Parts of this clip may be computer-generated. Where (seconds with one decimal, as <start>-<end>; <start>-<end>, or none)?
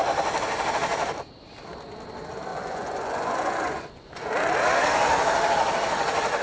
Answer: 2.5-4.3